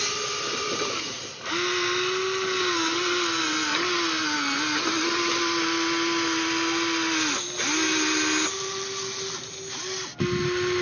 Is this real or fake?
real